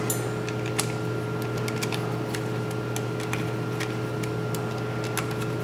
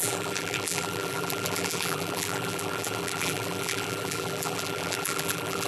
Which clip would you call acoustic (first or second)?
first